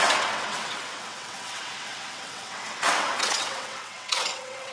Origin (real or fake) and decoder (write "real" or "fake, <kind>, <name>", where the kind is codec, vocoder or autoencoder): fake, vocoder, WaveNeXt